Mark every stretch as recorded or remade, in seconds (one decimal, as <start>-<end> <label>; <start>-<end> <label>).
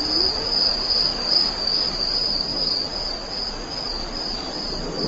0.0-1.1 recorded; 1.1-1.8 remade; 1.8-5.1 recorded